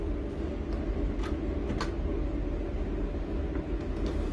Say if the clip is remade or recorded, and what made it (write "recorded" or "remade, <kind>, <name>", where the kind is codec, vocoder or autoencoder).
recorded